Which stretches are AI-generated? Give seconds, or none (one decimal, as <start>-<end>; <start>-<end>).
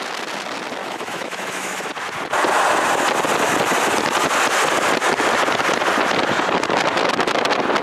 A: 0.8-1.9